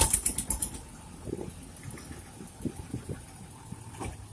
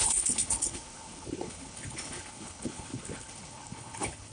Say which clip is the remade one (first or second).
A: second